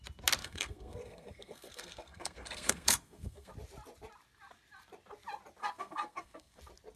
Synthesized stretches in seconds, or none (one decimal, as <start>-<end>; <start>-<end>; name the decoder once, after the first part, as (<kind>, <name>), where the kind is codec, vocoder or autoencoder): 0.4-3.5 (codec, SNAC); 5.6-6.6